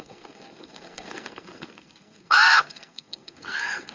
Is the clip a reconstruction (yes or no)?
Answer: yes